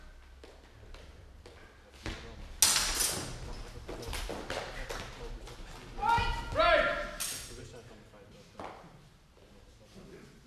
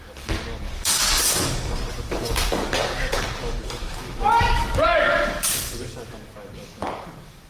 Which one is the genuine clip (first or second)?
first